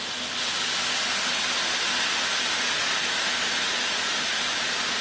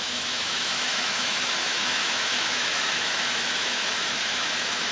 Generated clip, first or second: second